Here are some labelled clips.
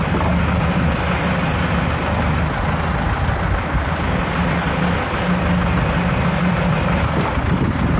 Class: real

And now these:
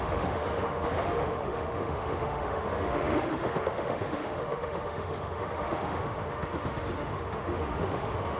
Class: fake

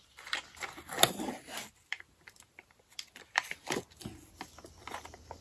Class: real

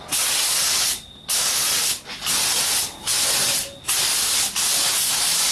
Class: real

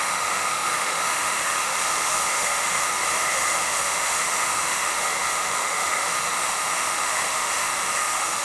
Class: fake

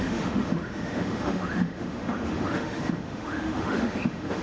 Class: fake